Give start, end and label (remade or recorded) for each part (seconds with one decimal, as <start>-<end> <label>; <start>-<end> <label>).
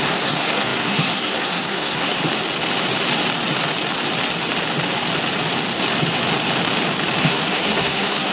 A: 0.0-2.2 remade; 2.2-7.2 recorded; 7.2-8.3 remade